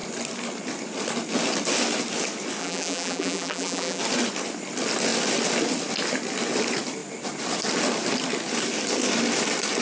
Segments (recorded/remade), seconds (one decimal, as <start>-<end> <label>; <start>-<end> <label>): 0.0-2.6 recorded; 2.6-4.0 remade; 4.0-9.8 recorded